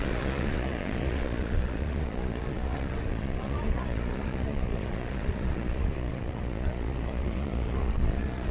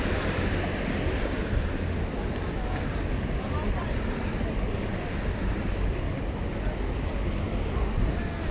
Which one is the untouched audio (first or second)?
second